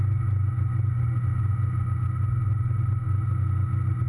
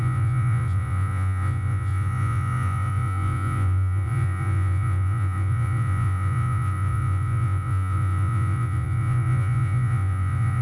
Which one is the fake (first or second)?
second